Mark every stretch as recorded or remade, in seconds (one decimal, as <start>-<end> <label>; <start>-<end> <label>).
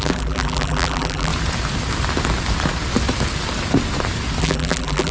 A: 0.0-1.3 remade; 1.3-4.4 recorded; 4.4-5.1 remade